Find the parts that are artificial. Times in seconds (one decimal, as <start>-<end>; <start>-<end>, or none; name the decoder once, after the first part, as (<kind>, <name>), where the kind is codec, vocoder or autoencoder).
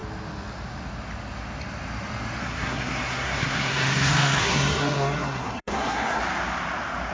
2.4-6.2 (codec, SNAC)